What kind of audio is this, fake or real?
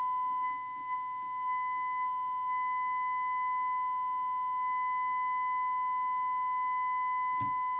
real